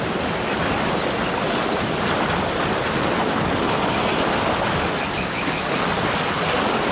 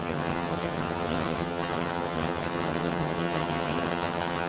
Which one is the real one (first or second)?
first